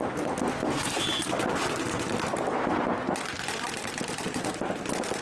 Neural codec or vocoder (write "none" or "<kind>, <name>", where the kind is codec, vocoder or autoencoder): none